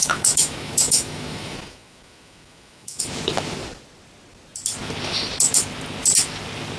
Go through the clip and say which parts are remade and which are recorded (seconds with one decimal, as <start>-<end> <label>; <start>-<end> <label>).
0.0-3.0 remade; 3.0-6.8 recorded